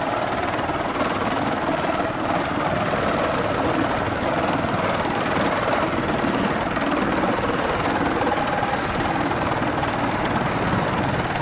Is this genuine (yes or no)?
yes